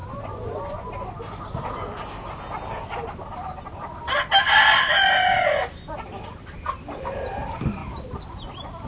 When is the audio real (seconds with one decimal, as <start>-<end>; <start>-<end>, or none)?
0.9-8.9